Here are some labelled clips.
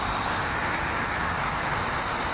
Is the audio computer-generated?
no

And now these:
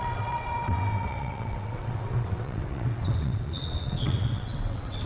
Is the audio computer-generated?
yes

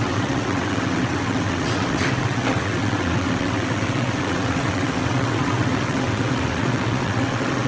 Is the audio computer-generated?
yes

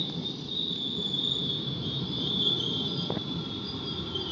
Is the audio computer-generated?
no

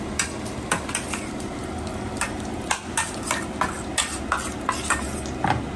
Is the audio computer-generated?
no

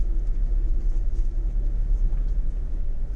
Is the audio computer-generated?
no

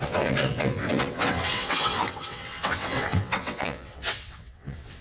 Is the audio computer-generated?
yes